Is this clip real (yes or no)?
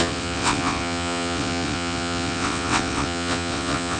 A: no